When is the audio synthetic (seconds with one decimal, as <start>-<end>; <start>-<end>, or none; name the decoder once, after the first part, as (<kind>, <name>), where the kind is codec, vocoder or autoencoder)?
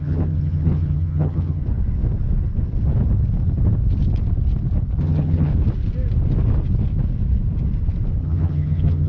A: 0.0-1.6 (vocoder, HiFi-GAN); 5.0-5.5; 8.2-9.1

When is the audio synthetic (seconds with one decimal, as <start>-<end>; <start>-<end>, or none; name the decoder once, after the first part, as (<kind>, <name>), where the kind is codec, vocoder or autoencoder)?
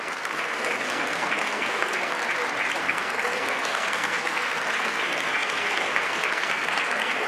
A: 0.0-2.2 (codec, SNAC); 2.8-7.3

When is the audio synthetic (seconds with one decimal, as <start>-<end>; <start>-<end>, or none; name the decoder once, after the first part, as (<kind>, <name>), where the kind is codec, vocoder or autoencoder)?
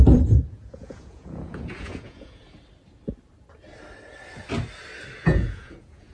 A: 0.0-2.4 (vocoder, Vocos); 5.2-6.1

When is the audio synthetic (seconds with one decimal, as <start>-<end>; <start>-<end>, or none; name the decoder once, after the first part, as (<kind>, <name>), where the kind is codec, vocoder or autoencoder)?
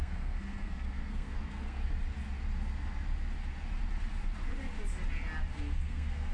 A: 0.0-1.8 (codec, SNAC); 5.6-6.3